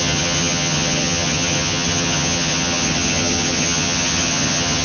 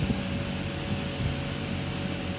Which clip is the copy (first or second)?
first